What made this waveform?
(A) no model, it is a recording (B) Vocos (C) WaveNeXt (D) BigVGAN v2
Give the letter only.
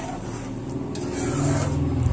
A